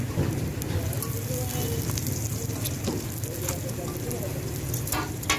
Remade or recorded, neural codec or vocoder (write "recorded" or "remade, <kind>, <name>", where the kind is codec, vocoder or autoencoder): recorded